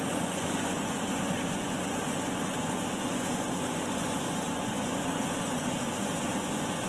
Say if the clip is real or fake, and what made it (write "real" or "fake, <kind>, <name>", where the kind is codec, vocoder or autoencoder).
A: fake, vocoder, Vocos